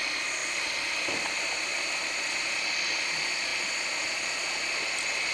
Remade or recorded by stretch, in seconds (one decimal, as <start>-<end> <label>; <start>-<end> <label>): 0.0-5.3 recorded